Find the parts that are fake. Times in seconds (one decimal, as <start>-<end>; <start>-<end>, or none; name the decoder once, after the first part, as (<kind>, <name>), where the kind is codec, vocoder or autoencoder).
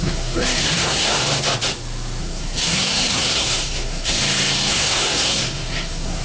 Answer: 0.0-1.2 (codec, SNAC); 2.2-4.2; 4.7-6.2